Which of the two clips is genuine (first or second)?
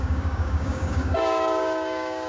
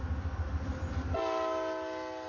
second